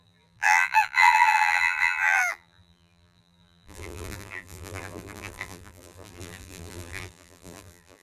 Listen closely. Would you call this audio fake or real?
fake